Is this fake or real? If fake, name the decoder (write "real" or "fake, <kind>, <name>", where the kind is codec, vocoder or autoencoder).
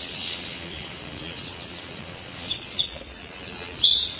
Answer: fake, vocoder, Vocos